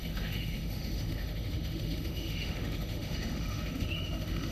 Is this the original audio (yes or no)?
no